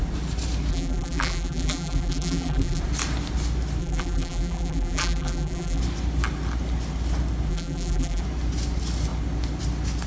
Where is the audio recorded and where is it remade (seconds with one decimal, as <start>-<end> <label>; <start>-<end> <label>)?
0.0-0.7 recorded; 0.7-2.8 remade; 2.8-3.8 recorded; 3.8-5.8 remade; 5.8-7.5 recorded; 7.5-8.2 remade; 8.2-10.1 recorded